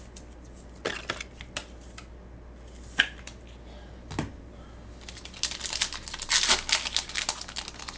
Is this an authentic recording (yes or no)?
yes